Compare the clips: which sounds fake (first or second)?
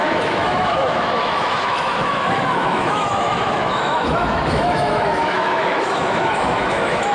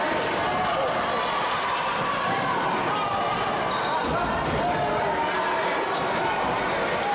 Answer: first